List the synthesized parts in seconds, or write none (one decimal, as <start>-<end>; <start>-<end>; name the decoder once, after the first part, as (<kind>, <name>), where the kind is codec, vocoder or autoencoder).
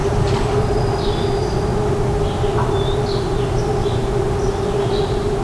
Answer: none